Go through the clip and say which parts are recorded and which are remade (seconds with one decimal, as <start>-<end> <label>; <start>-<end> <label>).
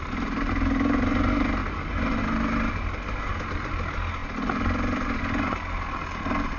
0.0-1.6 recorded; 1.6-2.2 remade; 2.2-6.6 recorded